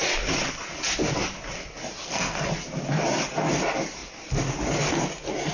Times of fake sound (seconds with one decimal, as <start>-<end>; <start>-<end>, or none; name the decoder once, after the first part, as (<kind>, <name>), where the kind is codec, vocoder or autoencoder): 2.0-2.5 (codec, SNAC)